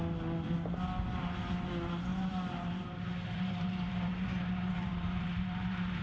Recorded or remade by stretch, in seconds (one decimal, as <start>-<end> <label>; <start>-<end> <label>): 0.0-2.1 recorded; 2.1-6.0 remade